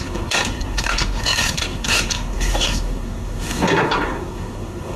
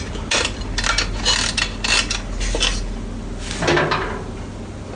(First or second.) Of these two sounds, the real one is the second